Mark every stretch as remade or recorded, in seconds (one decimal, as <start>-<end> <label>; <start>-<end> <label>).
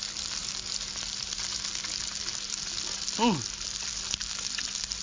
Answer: 0.0-5.0 recorded